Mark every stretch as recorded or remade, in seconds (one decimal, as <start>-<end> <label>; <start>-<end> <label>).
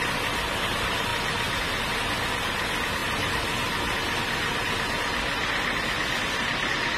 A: 0.0-7.0 recorded